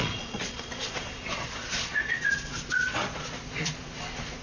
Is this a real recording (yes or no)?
no